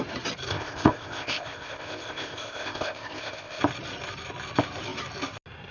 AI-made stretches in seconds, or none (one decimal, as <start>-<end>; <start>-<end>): 0.5-3.6